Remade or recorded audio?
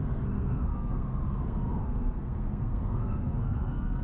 remade